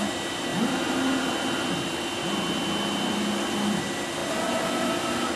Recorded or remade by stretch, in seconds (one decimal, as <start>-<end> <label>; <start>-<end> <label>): 0.0-5.4 recorded

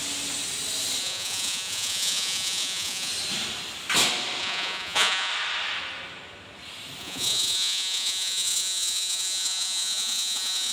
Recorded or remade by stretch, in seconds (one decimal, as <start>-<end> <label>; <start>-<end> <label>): 0.0-1.0 recorded; 1.0-3.1 remade; 3.1-4.4 recorded; 4.4-5.3 remade; 5.3-7.0 recorded; 7.0-10.7 remade

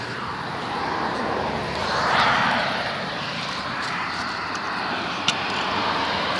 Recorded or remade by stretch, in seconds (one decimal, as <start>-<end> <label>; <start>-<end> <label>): 0.0-6.4 remade

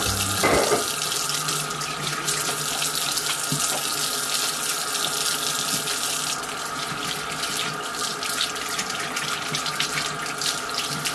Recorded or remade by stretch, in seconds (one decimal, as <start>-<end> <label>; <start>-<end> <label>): 0.0-11.1 recorded

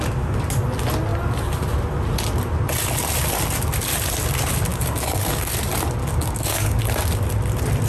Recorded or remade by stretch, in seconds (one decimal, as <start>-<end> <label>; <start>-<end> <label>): 0.0-4.7 recorded; 4.7-5.5 remade; 5.5-6.0 recorded; 6.0-6.8 remade; 6.8-7.9 recorded

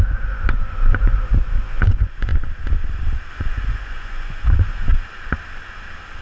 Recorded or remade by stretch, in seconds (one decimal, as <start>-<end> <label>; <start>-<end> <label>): 0.0-2.3 remade; 2.3-3.3 recorded; 3.3-4.9 remade; 4.9-6.2 recorded